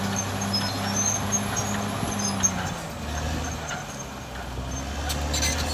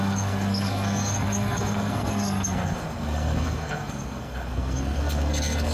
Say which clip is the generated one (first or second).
second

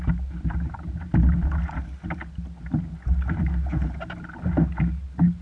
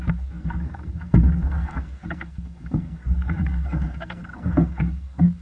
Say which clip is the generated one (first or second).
second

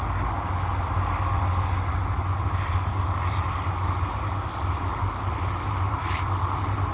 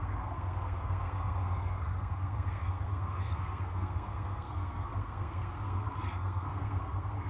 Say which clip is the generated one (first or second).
second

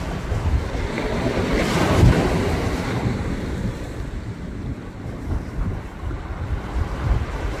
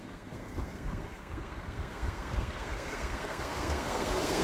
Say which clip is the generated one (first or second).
second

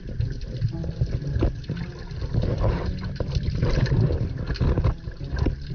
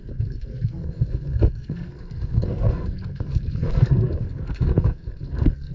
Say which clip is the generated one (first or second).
second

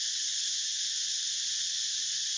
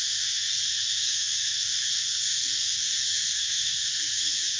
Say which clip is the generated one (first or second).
second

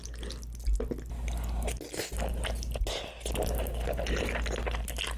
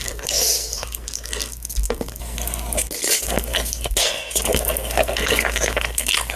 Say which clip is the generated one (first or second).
second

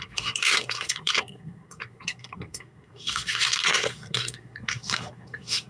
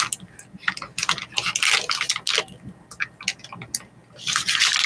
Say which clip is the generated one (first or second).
first